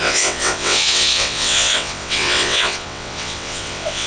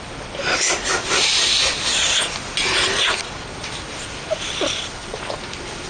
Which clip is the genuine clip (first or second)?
second